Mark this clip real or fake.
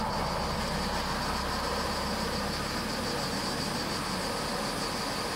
real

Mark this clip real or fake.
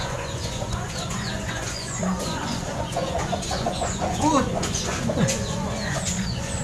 fake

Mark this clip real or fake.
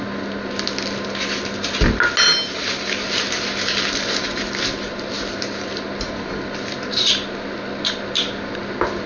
real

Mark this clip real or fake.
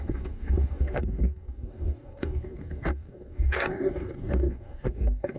fake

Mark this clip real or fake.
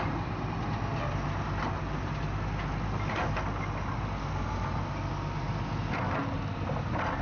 real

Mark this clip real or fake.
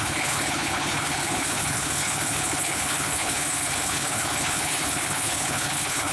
fake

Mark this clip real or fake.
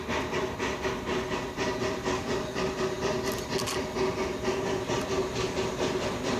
real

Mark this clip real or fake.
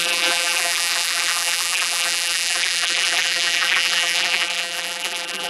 fake